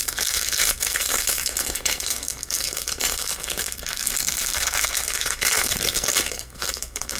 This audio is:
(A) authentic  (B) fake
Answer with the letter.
B